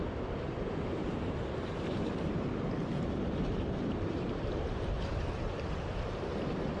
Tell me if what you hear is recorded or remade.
remade